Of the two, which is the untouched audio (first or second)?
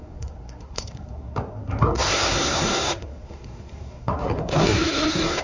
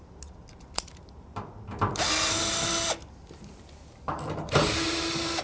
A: second